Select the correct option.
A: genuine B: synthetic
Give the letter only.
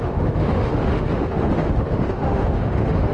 B